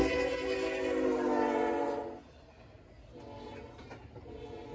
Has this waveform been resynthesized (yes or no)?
no